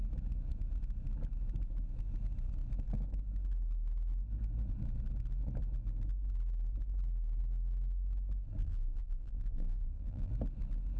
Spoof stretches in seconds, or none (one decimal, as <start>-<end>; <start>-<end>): 8.6-10.3